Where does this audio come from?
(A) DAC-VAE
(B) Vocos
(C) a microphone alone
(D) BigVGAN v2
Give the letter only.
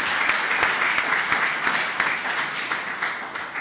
C